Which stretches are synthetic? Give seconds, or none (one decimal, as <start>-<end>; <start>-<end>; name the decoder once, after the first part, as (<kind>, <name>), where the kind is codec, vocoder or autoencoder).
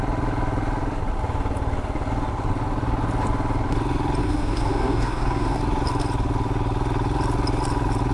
4.2-5.6 (codec, DAC)